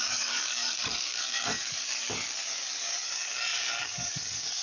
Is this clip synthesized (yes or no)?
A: yes